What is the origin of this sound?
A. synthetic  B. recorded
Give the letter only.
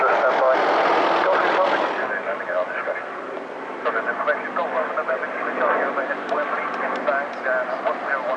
B